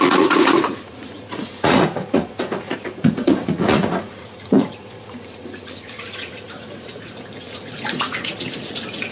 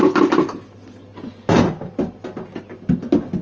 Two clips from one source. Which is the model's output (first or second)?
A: first